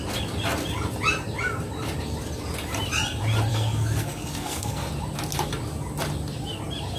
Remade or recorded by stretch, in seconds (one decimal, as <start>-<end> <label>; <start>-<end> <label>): 0.0-3.5 recorded; 3.5-4.9 remade; 4.9-7.0 recorded